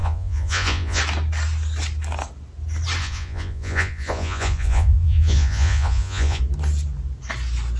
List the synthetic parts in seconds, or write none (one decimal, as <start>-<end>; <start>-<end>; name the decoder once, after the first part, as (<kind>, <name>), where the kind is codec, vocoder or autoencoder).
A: 0.0-1.0 (vocoder, Vocos); 3.0-6.4

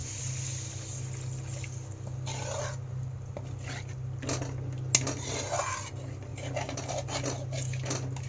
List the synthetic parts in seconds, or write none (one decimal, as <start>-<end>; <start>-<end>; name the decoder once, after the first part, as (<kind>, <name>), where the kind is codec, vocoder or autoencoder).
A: none

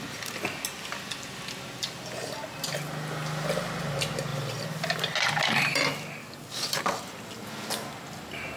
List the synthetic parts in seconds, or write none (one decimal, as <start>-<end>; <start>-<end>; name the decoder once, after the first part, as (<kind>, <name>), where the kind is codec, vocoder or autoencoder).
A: 6.2-6.7 (codec, DAC)

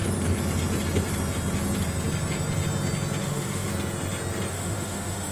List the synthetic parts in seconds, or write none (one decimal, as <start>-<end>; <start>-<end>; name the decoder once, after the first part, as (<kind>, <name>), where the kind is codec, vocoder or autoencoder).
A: 3.2-3.7 (autoencoder, DAC-VAE); 4.5-5.3

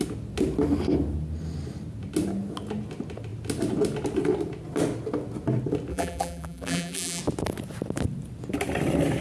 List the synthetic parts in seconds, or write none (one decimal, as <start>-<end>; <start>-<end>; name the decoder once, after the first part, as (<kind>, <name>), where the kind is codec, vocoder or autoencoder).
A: 5.9-7.2 (vocoder, BigVGAN v2)

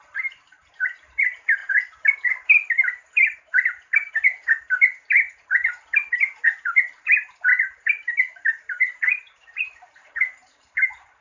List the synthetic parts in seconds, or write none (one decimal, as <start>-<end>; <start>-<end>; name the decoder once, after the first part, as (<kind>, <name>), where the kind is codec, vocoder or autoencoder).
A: 0.0-1.6 (vocoder, BigVGAN v2); 2.3-4.0; 6.1-7.5; 9.0-11.2

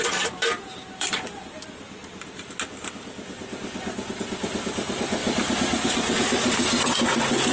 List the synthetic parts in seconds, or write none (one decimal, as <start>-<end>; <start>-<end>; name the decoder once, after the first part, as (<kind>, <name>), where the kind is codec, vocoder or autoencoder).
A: 0.0-2.0 (vocoder, BigVGAN v2); 4.2-5.2; 6.2-7.5